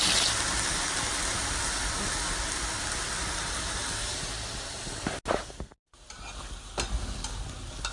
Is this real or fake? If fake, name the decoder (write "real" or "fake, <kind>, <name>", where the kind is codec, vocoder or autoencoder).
real